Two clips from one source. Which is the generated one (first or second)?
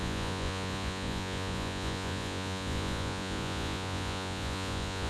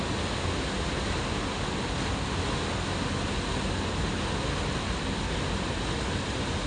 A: first